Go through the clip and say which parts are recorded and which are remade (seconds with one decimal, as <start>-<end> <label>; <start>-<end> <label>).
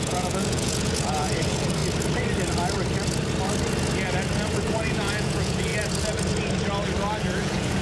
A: 0.0-1.8 remade; 1.8-4.7 recorded; 4.7-5.7 remade; 5.7-7.2 recorded; 7.2-7.8 remade